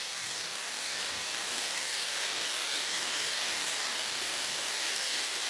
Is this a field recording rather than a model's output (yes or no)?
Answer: no